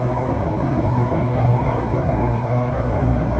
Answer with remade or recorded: remade